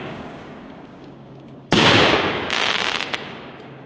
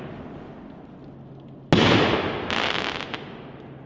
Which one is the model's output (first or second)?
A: first